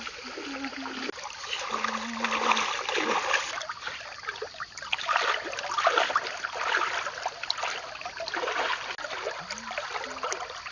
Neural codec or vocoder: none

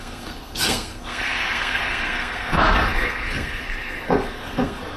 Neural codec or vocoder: codec, SNAC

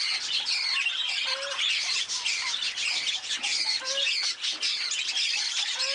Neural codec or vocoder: none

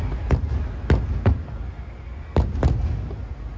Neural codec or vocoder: none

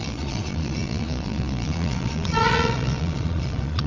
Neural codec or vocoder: vocoder, Vocos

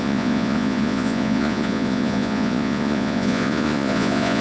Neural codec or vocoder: vocoder, Vocos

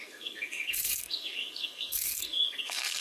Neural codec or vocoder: codec, SNAC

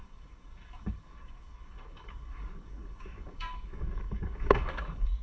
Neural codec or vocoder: codec, DAC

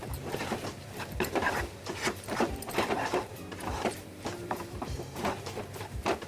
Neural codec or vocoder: vocoder, BigVGAN v2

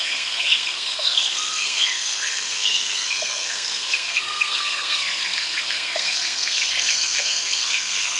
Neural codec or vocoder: codec, SNAC